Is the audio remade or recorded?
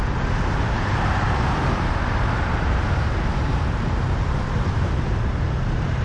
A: remade